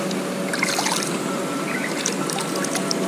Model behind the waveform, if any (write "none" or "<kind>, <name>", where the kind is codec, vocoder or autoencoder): none